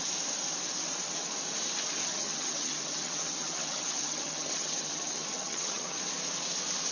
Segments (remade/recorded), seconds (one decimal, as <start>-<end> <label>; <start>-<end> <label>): 0.0-2.0 recorded; 2.0-6.0 remade; 6.0-6.9 recorded